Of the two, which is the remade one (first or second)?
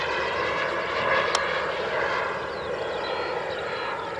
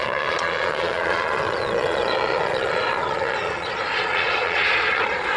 second